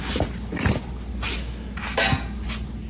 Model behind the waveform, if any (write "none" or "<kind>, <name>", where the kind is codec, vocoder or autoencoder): none